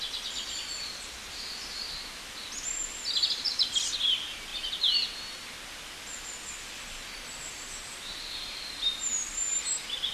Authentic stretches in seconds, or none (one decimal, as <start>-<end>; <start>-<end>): 0.0-10.1